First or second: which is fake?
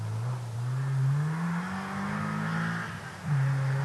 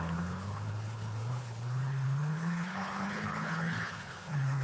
second